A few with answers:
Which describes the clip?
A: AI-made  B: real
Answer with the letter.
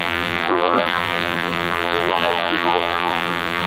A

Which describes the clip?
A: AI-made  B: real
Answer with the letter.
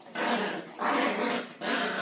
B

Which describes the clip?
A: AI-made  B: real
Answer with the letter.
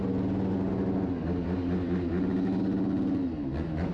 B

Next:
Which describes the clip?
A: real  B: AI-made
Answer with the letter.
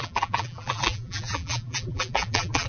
B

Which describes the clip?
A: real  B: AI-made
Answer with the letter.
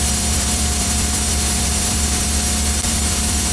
B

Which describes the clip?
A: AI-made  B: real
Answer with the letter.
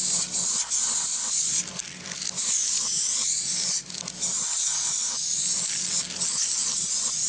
B